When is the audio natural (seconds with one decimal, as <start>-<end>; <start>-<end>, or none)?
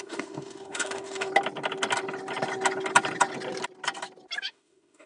1.3-4.4